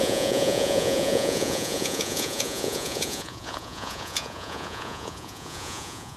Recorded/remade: remade